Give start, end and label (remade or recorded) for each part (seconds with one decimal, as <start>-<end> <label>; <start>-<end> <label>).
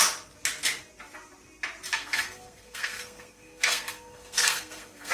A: 0.0-1.9 recorded; 1.9-5.1 remade